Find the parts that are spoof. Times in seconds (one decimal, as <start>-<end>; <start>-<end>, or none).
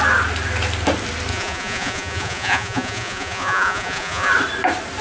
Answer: 1.3-4.3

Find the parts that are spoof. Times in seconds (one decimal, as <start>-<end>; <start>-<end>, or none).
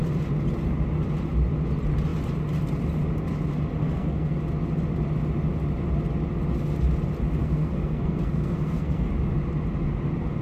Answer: 3.8-4.4; 7.4-9.1